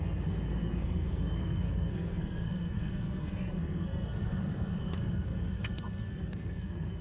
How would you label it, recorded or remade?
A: remade